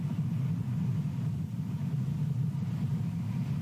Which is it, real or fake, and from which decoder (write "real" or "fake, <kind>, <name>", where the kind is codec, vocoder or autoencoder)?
fake, vocoder, BigVGAN v2